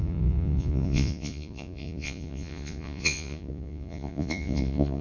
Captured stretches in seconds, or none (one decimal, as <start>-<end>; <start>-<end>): none